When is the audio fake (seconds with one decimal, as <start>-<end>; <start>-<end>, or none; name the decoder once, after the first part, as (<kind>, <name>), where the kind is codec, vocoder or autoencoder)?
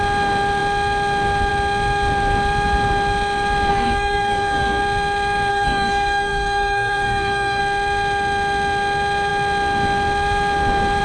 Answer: 3.7-4.8 (codec, SNAC); 5.5-7.6